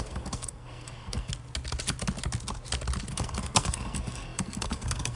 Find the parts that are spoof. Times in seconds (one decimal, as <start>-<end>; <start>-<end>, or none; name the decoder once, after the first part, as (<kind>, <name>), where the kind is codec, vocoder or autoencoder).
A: 0.0-1.3 (codec, SNAC); 3.1-5.2